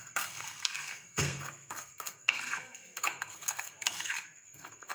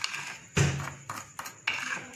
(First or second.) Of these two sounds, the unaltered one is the second